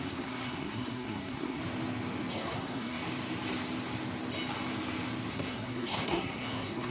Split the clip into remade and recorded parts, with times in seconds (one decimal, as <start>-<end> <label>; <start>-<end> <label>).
0.0-1.6 remade; 1.6-2.3 recorded; 2.3-3.0 remade; 3.0-5.3 recorded; 5.3-6.9 remade